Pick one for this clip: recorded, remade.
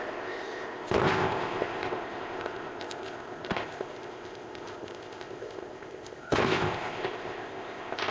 remade